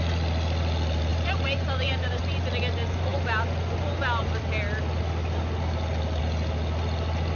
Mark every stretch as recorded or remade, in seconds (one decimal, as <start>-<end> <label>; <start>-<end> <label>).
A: 0.0-1.1 recorded; 1.1-2.2 remade; 2.2-7.3 recorded